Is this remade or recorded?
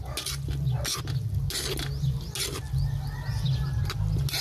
recorded